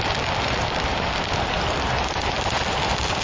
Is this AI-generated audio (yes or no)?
no